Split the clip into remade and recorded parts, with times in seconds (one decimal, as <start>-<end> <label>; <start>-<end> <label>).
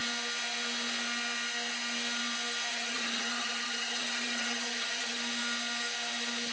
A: 0.0-2.7 recorded; 2.7-5.2 remade; 5.2-6.5 recorded